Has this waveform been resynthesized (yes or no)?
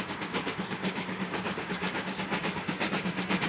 yes